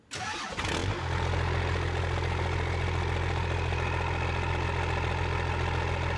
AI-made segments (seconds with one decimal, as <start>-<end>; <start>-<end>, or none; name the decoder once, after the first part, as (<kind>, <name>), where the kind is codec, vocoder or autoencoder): none